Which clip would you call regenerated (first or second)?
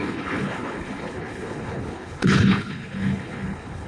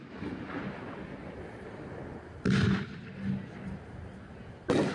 first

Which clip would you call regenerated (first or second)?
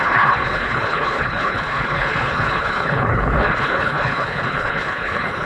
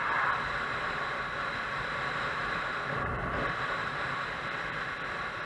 first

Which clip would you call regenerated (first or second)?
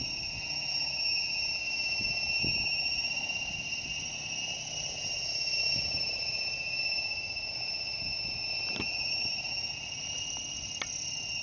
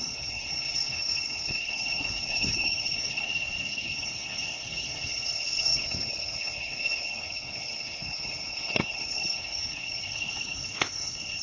second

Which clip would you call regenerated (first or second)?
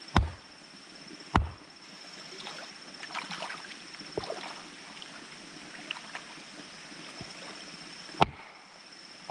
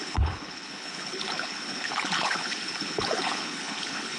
second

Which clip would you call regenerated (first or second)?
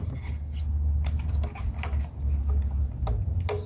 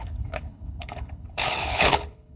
second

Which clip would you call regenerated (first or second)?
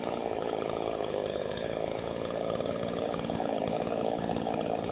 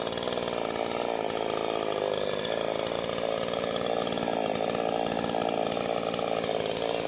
first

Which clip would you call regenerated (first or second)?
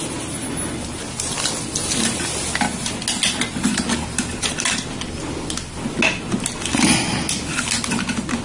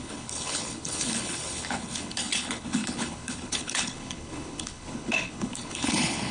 second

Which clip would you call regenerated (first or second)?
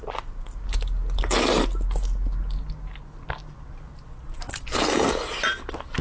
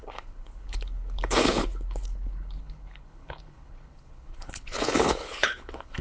second